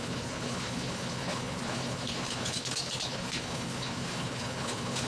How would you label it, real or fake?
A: fake